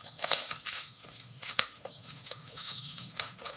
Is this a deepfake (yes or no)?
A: yes